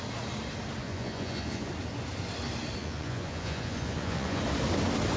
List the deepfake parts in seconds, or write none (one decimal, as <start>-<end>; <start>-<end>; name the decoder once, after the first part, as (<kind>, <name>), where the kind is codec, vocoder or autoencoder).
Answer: 0.8-1.7 (vocoder, Vocos); 2.8-4.4